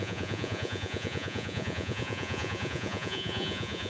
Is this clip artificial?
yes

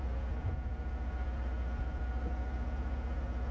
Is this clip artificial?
no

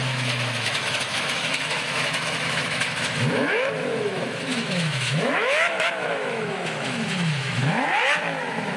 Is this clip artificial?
yes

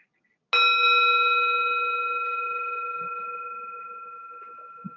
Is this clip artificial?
no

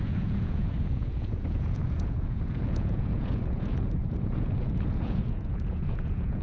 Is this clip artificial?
yes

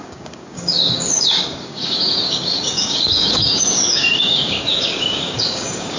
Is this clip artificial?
yes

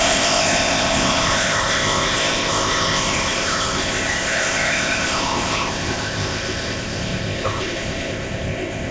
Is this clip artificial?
yes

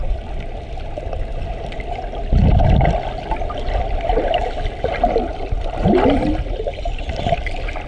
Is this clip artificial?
no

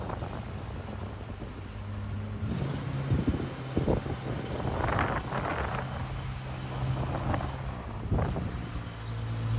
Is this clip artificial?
no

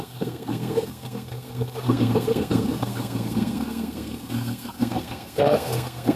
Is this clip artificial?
yes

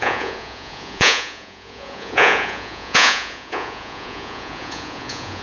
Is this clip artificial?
yes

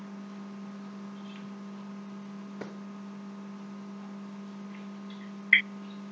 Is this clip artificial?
no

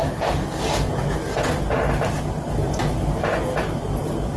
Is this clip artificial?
no